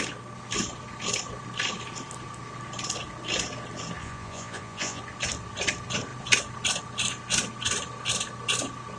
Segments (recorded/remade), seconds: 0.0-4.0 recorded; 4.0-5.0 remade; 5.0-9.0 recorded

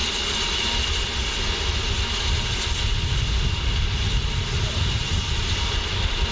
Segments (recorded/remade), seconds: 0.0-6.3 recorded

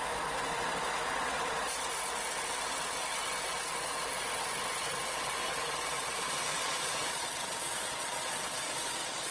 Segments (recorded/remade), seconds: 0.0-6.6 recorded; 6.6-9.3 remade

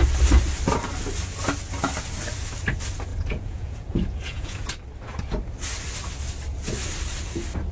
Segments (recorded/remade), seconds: 0.0-3.1 recorded; 3.1-4.7 remade; 4.7-7.7 recorded

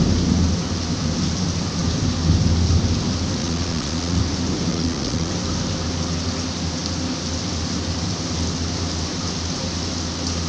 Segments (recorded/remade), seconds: 0.0-3.4 recorded; 3.4-4.2 remade; 4.2-4.7 recorded; 4.7-5.3 remade; 5.3-10.5 recorded

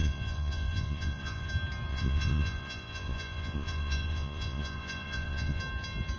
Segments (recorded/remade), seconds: 0.0-1.5 remade; 1.5-1.9 recorded; 1.9-5.6 remade; 5.6-6.2 recorded

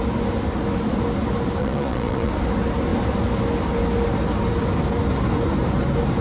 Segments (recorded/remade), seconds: 0.0-1.6 recorded; 1.6-2.3 remade; 2.3-6.2 recorded

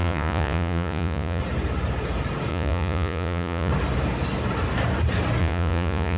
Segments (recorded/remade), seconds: 0.0-1.4 remade; 1.4-2.5 recorded; 2.5-3.7 remade; 3.7-5.4 recorded; 5.4-6.2 remade